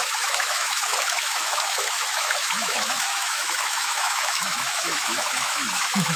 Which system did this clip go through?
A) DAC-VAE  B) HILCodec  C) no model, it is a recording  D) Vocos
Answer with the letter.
A